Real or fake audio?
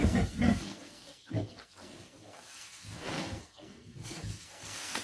fake